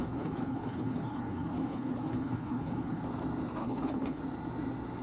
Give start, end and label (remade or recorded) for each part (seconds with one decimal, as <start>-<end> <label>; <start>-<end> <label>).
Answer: 0.0-3.0 remade; 3.0-3.6 recorded; 3.6-4.2 remade; 4.2-5.0 recorded